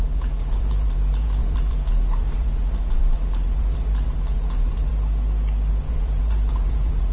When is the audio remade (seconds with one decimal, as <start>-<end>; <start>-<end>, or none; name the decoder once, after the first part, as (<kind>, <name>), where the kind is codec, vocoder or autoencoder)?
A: 0.0-4.9 (vocoder, BigVGAN v2); 5.7-7.1